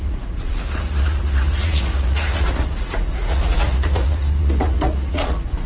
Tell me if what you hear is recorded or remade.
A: remade